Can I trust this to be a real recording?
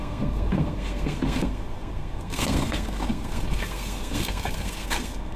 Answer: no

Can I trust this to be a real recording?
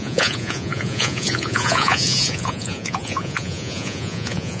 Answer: no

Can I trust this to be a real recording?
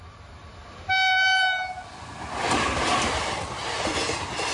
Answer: yes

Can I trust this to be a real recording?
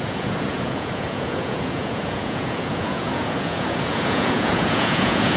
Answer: no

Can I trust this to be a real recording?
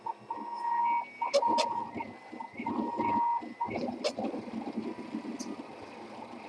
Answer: yes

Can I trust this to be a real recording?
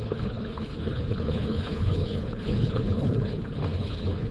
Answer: no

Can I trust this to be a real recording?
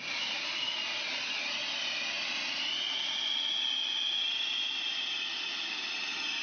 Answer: yes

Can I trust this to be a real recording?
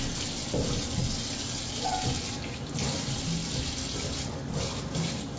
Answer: yes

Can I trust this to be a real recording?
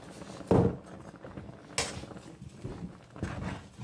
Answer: yes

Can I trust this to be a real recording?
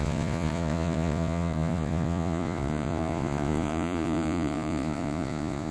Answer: no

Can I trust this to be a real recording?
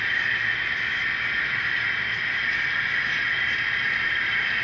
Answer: yes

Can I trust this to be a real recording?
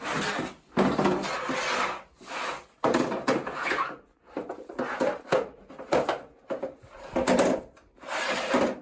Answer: yes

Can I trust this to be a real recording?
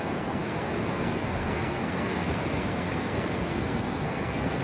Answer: no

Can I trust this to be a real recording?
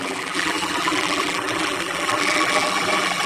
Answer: no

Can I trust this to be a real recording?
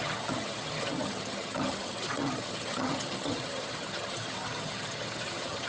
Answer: no